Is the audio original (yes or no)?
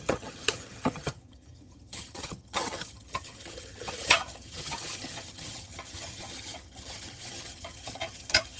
no